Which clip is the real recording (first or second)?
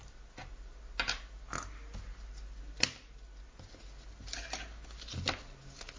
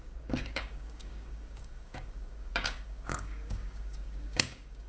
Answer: first